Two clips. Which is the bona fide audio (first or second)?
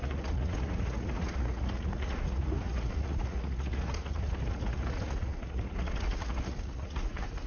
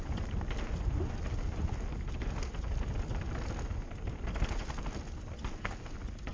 second